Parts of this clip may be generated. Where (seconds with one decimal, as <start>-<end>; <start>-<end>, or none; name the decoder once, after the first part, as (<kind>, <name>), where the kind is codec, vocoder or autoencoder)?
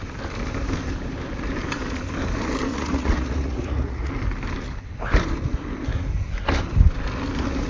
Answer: 2.7-4.1 (vocoder, Vocos)